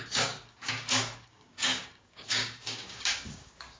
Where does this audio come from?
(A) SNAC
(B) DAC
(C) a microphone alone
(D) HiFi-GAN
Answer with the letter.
B